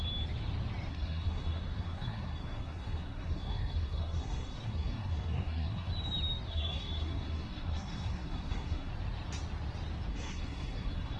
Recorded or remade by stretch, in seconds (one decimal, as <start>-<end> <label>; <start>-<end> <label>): 0.0-0.9 recorded; 0.9-5.9 remade; 5.9-6.5 recorded; 6.5-8.9 remade; 8.9-10.1 recorded; 10.1-11.2 remade